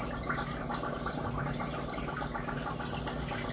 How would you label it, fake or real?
real